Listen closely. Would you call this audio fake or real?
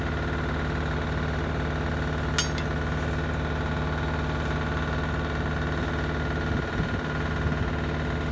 real